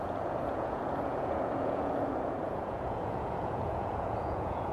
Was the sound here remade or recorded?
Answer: remade